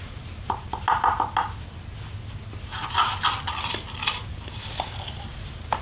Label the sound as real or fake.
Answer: real